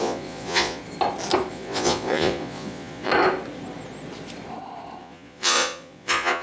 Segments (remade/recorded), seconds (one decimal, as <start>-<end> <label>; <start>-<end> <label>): 0.0-0.8 remade; 0.8-1.5 recorded; 1.5-3.1 remade; 3.1-5.0 recorded; 5.0-6.4 remade

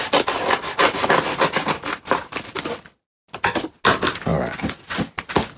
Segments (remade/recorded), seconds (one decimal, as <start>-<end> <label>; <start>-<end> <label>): 0.0-5.6 recorded